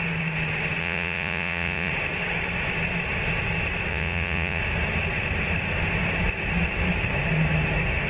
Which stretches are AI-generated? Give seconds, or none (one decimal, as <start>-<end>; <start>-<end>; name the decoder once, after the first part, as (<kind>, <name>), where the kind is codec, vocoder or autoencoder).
0.8-1.9 (vocoder, Vocos); 3.9-4.6

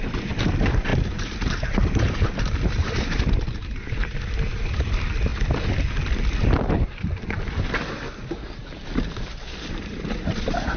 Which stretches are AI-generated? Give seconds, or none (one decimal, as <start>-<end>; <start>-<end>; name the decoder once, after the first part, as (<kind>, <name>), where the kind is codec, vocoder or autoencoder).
0.0-5.3 (vocoder, BigVGAN v2); 9.7-10.8